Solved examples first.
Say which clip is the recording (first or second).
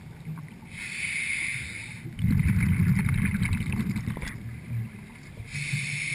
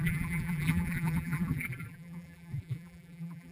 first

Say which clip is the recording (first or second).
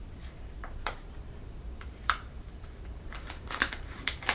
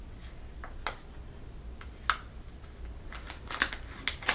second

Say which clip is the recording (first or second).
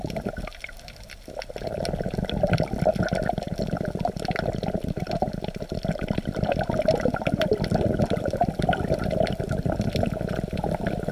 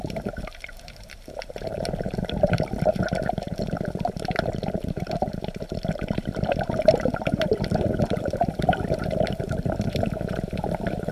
first